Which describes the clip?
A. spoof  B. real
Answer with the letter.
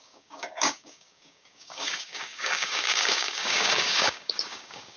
A